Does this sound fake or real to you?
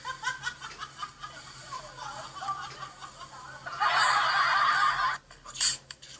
real